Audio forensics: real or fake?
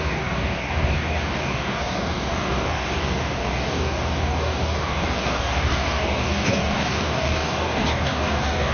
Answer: fake